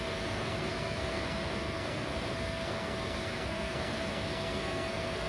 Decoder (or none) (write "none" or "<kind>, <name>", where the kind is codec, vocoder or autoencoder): codec, SNAC